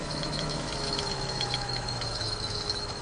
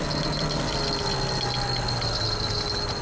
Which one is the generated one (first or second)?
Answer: first